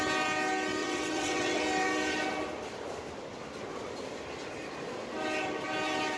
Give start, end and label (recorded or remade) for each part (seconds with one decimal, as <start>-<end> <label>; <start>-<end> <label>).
0.0-0.8 recorded; 0.8-1.6 remade; 1.6-6.2 recorded